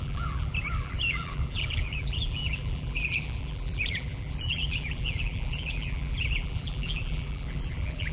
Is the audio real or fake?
fake